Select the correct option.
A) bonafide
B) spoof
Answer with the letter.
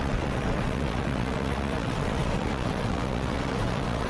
B